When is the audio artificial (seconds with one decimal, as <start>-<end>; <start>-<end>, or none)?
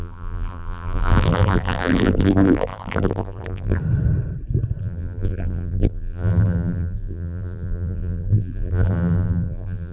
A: 0.0-3.8; 4.8-9.9